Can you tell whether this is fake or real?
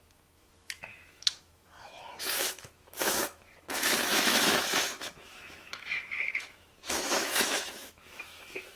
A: fake